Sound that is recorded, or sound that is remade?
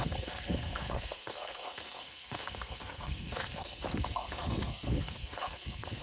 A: remade